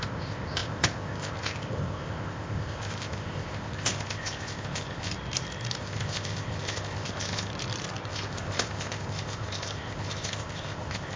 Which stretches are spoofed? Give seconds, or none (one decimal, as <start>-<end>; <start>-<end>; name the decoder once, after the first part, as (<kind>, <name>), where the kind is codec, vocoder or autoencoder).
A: 0.0-5.1 (codec, ZipCodec); 5.8-7.5; 8.1-11.2